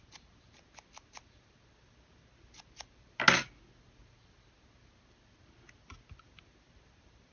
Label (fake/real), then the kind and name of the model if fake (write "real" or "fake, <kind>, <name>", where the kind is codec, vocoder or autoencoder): real